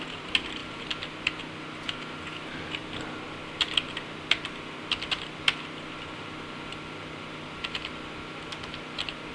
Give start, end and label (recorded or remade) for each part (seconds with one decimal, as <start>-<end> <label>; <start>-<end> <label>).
0.0-9.3 recorded